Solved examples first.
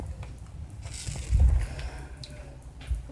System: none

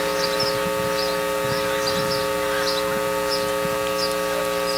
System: none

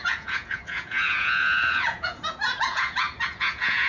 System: vocoder, Vocos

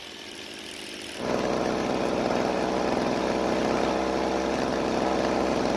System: none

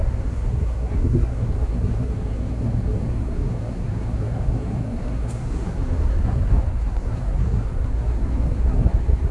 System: codec, SNAC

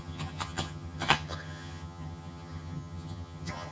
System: vocoder, HiFi-GAN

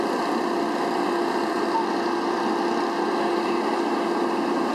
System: none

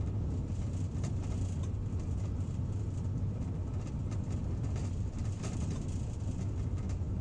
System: vocoder, BigVGAN v2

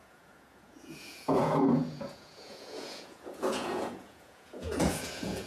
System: vocoder, Vocos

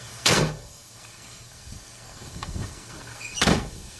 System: codec, SNAC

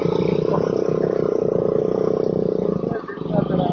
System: none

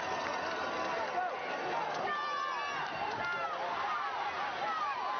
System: none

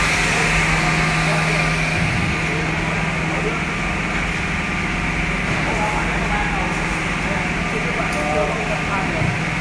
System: none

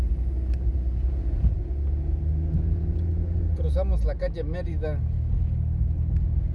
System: none